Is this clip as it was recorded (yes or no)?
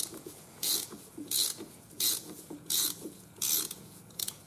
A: no